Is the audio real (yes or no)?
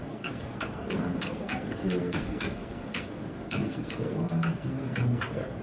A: no